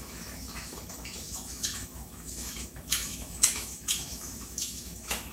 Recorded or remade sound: remade